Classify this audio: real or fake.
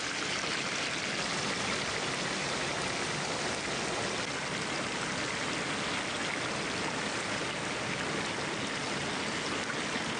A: real